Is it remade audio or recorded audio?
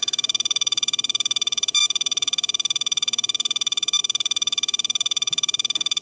remade